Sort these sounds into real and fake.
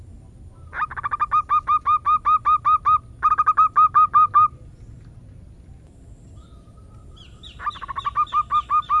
real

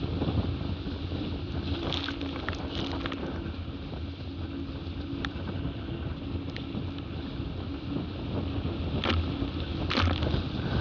real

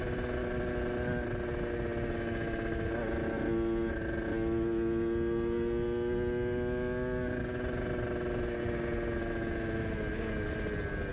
real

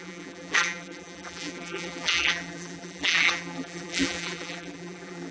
fake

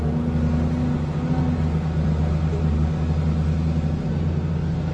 real